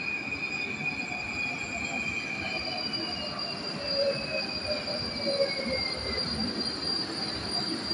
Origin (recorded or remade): recorded